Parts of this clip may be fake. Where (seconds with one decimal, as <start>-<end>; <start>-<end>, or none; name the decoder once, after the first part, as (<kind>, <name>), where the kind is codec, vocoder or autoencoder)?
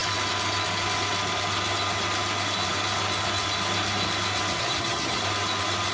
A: 4.5-5.2 (vocoder, HiFi-GAN)